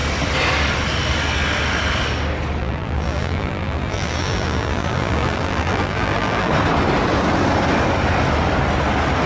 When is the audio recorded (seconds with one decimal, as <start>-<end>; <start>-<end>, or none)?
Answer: 0.0-2.6; 6.5-9.3